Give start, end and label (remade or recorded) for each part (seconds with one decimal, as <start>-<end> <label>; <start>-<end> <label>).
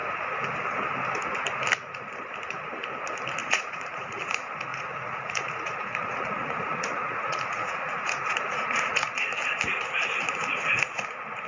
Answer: 0.0-3.4 recorded; 3.4-4.2 remade; 4.2-4.7 recorded; 4.7-9.4 remade; 9.4-11.5 recorded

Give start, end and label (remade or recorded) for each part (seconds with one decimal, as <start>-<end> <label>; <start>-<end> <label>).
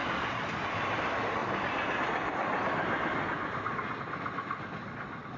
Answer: 0.0-5.4 recorded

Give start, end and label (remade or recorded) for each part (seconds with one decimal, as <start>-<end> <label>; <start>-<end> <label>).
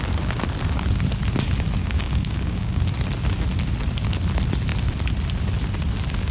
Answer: 0.0-1.8 recorded; 1.8-2.8 remade; 2.8-6.3 recorded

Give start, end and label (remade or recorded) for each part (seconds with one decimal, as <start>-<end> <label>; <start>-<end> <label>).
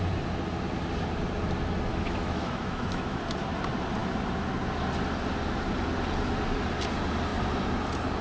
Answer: 0.0-1.9 recorded; 1.9-3.2 remade; 3.2-8.2 recorded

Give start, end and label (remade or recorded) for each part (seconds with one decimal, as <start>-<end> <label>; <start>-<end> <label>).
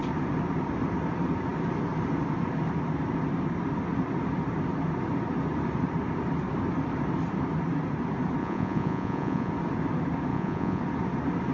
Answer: 0.0-8.4 recorded; 8.4-9.5 remade; 9.5-10.3 recorded; 10.3-10.8 remade; 10.8-11.5 recorded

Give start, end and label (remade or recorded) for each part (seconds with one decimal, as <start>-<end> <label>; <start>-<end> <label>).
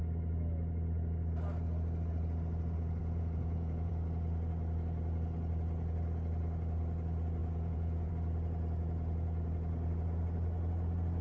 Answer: 0.0-3.0 recorded; 3.0-3.9 remade; 3.9-7.4 recorded; 7.4-8.1 remade; 8.1-11.2 recorded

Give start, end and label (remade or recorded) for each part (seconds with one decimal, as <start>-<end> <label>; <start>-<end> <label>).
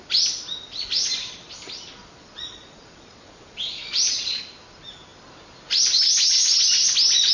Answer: 0.0-2.0 recorded; 2.0-4.4 remade; 4.4-7.3 recorded